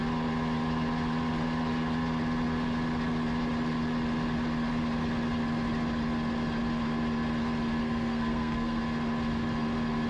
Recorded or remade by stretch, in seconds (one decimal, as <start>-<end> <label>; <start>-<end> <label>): 0.0-7.8 recorded; 7.8-8.8 remade; 8.8-10.1 recorded